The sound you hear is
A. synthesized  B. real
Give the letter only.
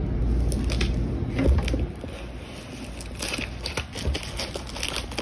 B